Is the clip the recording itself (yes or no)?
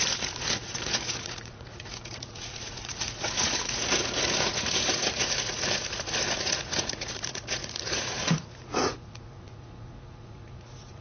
no